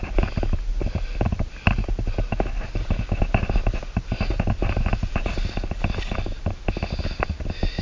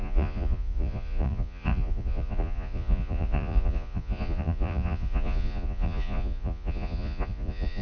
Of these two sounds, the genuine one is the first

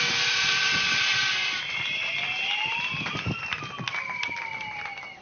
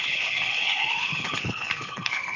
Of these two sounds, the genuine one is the first